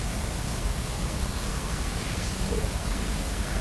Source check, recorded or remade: remade